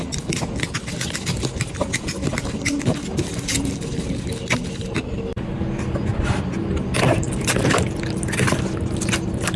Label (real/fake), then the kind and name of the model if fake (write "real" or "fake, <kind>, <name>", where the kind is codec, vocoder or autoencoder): real